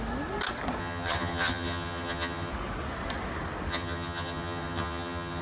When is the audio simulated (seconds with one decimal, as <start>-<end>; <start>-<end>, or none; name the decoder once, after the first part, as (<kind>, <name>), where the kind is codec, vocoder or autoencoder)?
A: 0.8-2.5 (vocoder, HiFi-GAN); 3.7-5.4